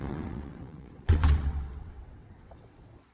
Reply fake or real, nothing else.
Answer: fake